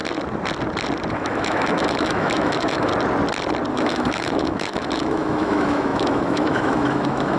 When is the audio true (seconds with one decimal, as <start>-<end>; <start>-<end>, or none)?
0.0-1.1; 2.9-3.7